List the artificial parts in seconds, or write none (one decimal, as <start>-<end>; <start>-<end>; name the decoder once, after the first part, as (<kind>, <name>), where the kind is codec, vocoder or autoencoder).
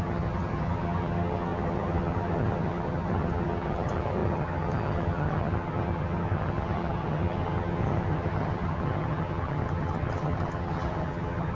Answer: 0.0-11.5 (vocoder, HiFi-GAN)